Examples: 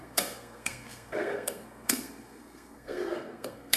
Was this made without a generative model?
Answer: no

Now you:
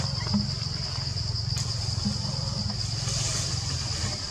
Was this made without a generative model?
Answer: yes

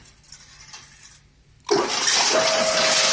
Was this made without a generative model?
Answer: yes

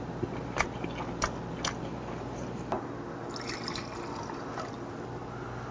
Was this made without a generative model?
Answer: yes